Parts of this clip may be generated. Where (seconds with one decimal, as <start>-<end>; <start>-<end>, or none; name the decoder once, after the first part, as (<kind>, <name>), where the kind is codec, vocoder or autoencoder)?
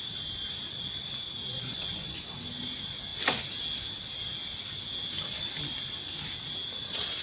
1.5-2.2 (vocoder, Vocos)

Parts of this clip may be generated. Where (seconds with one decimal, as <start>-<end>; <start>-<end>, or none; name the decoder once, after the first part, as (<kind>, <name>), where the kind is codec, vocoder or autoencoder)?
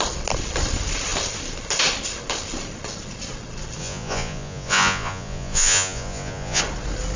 3.8-6.6 (vocoder, Vocos)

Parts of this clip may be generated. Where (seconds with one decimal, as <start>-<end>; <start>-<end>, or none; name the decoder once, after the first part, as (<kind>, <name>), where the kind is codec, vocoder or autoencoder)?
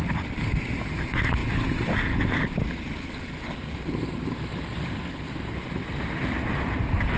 none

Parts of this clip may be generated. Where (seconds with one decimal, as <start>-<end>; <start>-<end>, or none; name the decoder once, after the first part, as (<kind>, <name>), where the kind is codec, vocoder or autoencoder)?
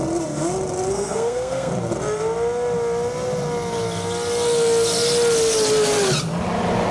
0.9-1.7 (codec, SNAC)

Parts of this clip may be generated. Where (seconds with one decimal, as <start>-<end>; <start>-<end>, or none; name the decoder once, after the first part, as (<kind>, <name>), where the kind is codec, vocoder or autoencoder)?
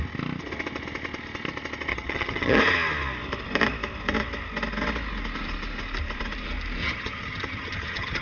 1.9-2.6 (vocoder, HiFi-GAN); 6.8-8.2